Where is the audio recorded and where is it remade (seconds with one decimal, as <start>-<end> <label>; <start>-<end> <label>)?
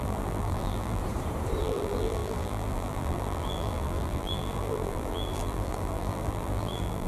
0.0-1.0 remade; 1.0-1.6 recorded; 1.6-7.1 remade